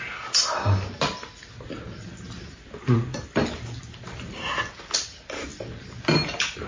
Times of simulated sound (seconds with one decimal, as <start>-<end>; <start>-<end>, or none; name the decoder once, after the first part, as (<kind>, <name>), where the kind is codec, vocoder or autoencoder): none